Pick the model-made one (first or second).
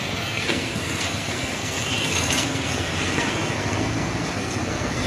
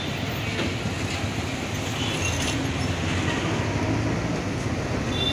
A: first